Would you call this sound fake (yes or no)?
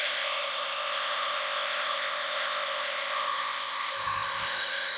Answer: yes